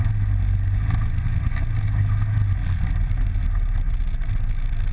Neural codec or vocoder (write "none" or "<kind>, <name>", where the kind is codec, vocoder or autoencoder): none